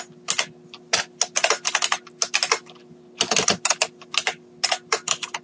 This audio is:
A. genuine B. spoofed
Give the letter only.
A